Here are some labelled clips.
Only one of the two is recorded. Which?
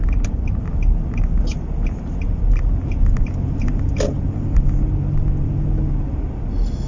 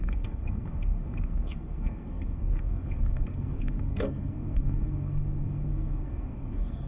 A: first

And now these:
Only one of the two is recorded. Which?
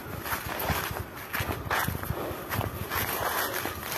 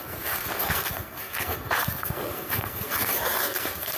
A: first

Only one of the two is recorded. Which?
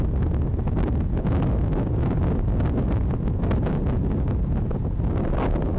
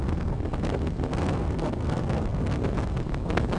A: first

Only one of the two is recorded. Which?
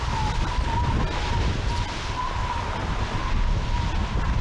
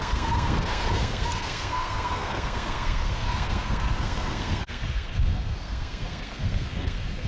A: first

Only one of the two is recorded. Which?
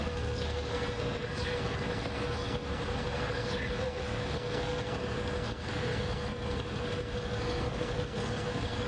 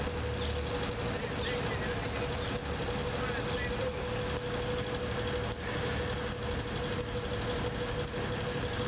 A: second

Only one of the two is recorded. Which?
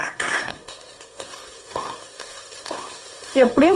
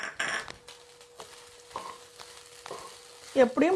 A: second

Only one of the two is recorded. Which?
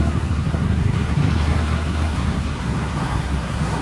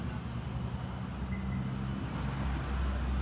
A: second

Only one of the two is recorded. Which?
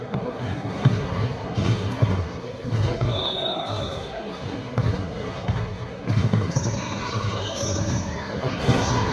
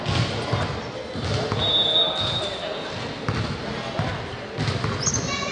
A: second